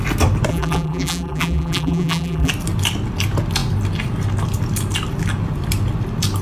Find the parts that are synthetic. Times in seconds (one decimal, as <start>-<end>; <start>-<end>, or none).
0.5-2.5